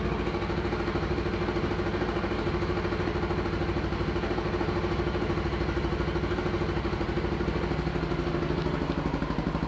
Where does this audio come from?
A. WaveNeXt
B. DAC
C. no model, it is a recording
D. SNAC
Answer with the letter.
C